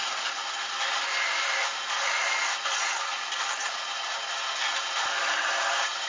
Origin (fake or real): real